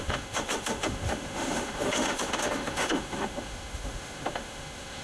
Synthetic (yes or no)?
yes